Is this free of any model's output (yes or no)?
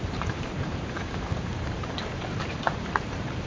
no